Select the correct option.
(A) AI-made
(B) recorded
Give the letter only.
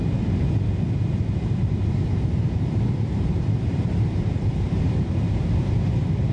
A